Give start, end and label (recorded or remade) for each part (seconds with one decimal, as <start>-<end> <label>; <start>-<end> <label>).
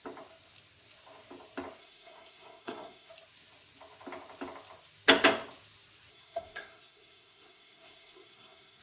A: 0.0-1.8 recorded; 1.8-3.1 remade; 3.1-6.1 recorded; 6.1-8.8 remade